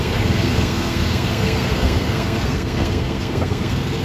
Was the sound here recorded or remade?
remade